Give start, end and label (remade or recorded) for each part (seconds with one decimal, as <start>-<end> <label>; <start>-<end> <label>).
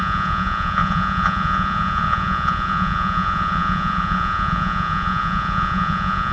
0.0-6.3 remade